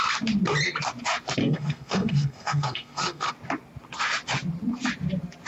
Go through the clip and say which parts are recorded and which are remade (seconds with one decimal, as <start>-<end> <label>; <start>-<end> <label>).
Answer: 0.0-1.4 recorded; 1.4-3.3 remade; 3.3-5.5 recorded